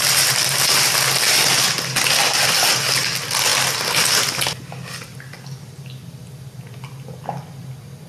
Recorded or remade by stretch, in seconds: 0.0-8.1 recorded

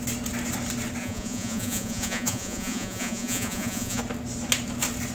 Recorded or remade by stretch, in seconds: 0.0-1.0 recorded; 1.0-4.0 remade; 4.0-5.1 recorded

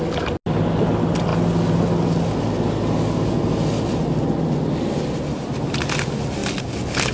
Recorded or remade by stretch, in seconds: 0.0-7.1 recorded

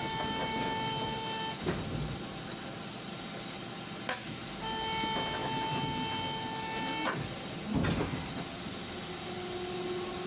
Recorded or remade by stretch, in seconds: 0.0-10.3 recorded